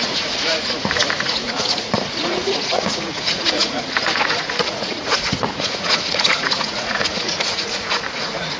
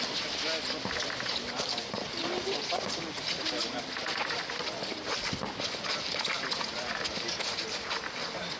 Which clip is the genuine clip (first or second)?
second